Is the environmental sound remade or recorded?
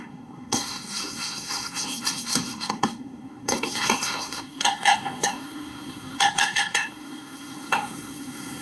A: remade